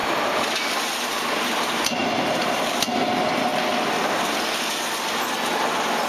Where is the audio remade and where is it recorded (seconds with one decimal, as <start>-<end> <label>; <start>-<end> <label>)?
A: 0.0-0.6 remade; 0.6-2.0 recorded; 2.0-2.7 remade; 2.7-6.1 recorded